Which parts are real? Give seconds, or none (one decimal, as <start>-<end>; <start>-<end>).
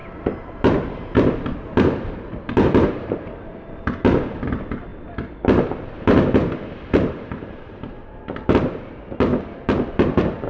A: 4.9-5.7; 9.3-9.9